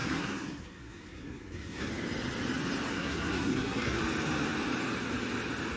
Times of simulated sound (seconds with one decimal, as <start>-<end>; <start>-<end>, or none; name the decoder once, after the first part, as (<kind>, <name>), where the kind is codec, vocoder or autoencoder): 0.0-1.9 (codec, SNAC); 2.9-4.0